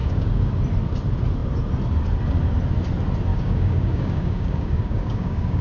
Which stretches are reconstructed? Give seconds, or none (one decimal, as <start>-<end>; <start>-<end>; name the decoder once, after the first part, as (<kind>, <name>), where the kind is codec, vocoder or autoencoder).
0.0-0.6 (codec, DAC); 3.3-5.6